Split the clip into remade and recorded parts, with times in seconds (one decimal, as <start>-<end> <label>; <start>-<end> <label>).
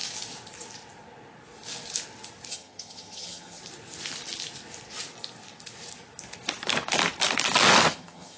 0.0-2.5 recorded; 2.5-3.6 remade; 3.6-7.9 recorded; 7.9-8.4 remade